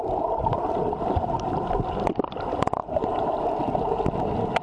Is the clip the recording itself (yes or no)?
yes